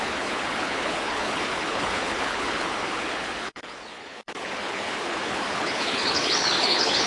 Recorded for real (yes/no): no